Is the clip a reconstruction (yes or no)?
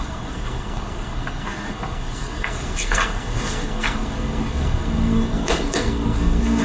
yes